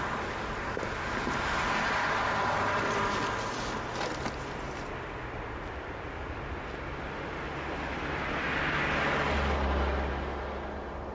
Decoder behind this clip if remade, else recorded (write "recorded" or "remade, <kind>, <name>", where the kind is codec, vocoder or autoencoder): recorded